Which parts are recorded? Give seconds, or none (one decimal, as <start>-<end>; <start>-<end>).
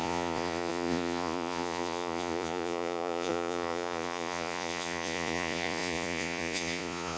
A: none